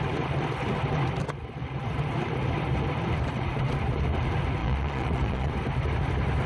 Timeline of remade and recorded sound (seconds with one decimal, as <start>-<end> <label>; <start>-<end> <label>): 0.0-4.6 recorded; 4.6-5.5 remade; 5.5-6.5 recorded